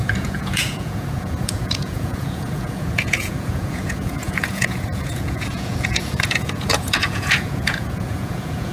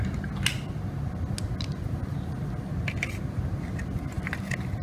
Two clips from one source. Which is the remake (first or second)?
first